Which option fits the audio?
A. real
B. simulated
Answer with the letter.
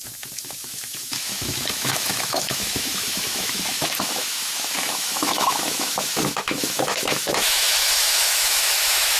B